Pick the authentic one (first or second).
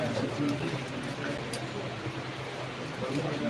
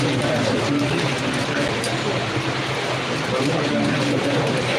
first